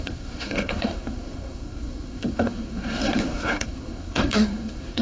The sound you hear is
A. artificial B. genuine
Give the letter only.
A